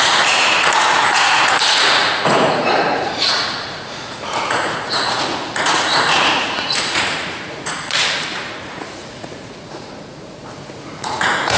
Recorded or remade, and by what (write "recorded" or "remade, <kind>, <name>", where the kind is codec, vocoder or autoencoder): remade, vocoder, Vocos